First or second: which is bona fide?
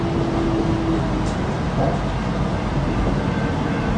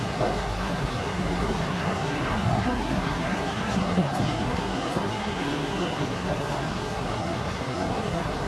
first